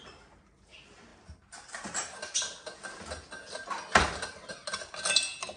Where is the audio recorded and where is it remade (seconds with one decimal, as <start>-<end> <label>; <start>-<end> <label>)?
0.0-5.6 recorded